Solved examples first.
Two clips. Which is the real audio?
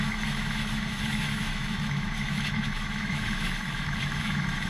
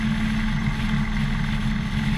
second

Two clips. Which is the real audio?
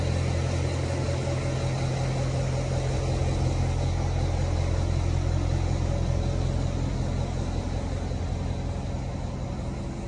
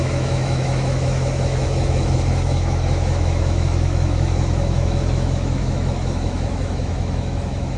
first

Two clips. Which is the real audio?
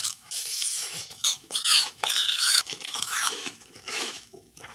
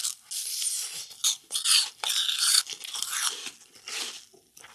second